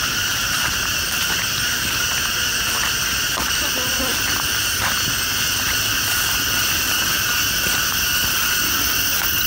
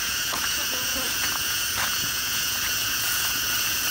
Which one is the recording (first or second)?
first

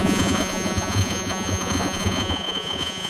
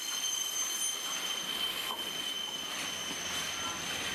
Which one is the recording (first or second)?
second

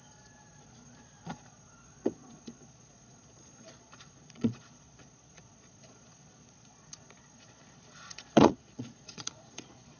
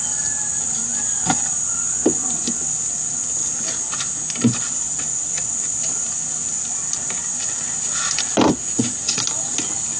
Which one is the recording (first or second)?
second